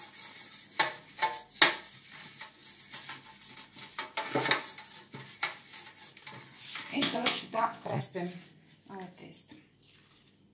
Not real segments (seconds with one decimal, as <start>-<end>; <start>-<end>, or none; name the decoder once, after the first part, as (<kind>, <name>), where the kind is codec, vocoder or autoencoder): 6.9-8.0 (vocoder, Vocos)